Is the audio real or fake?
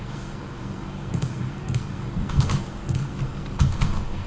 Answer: fake